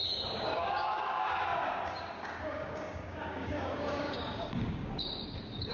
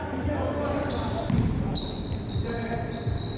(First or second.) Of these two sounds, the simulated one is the first